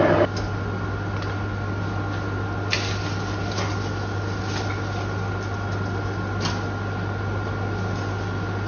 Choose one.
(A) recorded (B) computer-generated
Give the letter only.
A